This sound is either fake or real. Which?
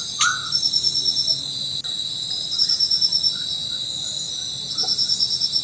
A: real